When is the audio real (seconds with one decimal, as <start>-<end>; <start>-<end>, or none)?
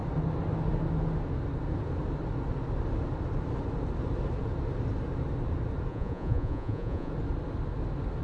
0.0-5.9; 7.1-8.2